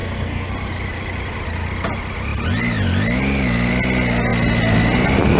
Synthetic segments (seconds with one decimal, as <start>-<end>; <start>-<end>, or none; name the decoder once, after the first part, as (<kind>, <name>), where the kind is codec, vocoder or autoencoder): 0.0-0.5 (codec, SNAC)